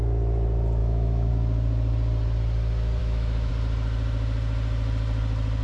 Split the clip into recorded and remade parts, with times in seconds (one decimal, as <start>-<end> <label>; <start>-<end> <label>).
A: 0.0-0.8 recorded; 0.8-1.3 remade; 1.3-3.0 recorded; 3.0-3.5 remade; 3.5-5.6 recorded